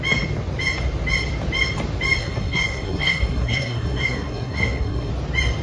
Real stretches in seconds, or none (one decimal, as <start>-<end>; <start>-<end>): 0.0-2.2; 5.1-5.6